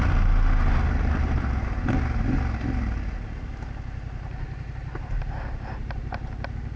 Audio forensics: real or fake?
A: real